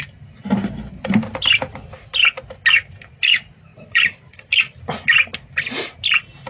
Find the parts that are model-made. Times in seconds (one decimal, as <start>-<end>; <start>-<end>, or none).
3.7-4.5